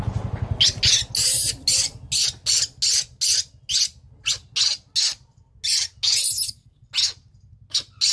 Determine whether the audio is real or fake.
real